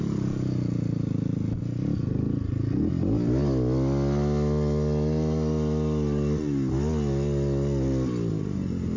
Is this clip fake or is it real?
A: real